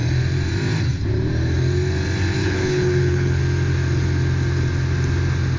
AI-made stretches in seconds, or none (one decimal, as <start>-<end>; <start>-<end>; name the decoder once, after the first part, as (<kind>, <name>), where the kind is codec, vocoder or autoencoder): 2.4-3.4 (codec, HILCodec)